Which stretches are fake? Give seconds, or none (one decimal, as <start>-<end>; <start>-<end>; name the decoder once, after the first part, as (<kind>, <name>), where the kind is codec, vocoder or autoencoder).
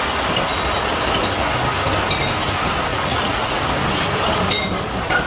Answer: 2.9-3.6 (vocoder, Vocos)